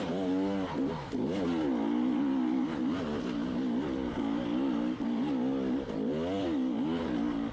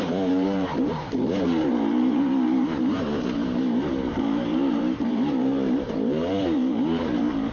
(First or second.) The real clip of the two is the first